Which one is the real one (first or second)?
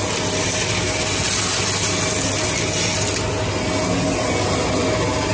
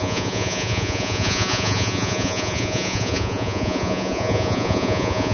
first